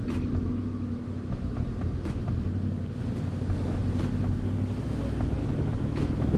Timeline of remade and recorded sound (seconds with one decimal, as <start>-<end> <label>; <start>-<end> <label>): 0.0-2.2 remade; 2.2-5.4 recorded; 5.4-6.4 remade